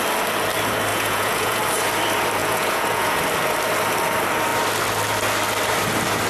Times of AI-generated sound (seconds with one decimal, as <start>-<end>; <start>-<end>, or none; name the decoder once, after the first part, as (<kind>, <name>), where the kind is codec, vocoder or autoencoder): 0.9-1.6 (vocoder, Vocos); 2.4-3.2